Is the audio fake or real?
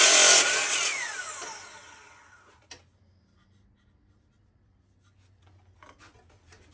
real